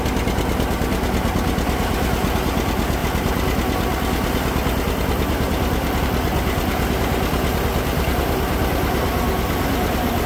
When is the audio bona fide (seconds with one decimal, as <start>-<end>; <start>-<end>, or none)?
0.0-10.3